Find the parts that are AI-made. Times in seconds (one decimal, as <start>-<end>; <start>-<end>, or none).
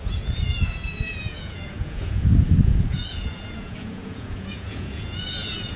0.0-5.8